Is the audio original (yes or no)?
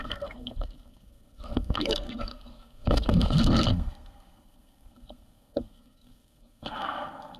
no